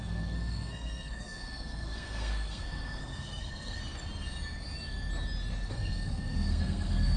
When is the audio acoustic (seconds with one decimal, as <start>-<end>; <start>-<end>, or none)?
3.8-5.7